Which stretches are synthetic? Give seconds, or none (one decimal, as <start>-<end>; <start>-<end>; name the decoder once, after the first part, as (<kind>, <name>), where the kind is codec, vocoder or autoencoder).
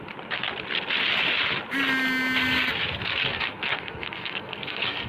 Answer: 3.3-5.1 (codec, SNAC)